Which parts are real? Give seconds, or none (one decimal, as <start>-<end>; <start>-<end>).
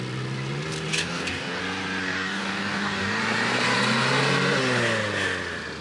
0.0-0.9; 1.6-2.0; 3.2-5.8